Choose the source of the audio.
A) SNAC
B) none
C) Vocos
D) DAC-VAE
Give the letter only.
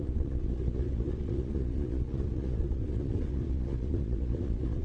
C